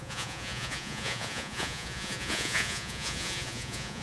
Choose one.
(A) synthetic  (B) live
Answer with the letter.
A